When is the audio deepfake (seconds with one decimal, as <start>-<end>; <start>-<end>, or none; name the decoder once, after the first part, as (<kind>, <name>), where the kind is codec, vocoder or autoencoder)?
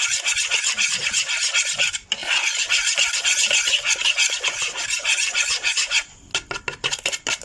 none